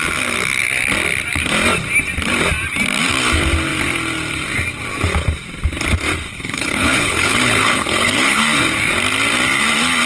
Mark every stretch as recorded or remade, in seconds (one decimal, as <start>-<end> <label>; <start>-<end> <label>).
0.0-6.3 recorded; 6.3-8.4 remade; 8.4-10.1 recorded